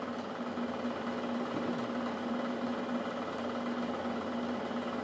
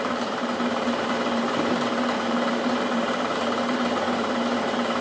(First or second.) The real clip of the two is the first